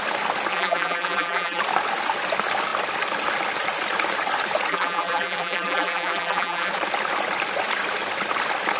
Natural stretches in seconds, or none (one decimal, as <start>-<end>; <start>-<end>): 0.0-0.5; 1.6-4.7; 6.7-8.8